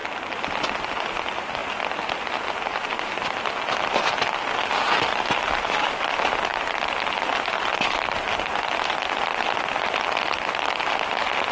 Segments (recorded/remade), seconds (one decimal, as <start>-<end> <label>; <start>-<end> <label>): 0.0-11.5 recorded